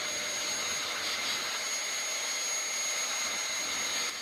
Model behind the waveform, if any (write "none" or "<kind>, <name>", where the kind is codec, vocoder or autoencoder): none